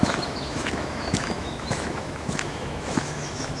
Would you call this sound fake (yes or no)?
yes